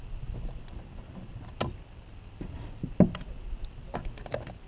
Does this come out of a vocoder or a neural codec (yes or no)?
no